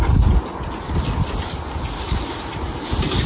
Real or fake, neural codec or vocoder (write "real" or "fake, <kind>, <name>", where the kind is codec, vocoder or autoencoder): real